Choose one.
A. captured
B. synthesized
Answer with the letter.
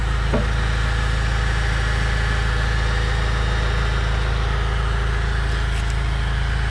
A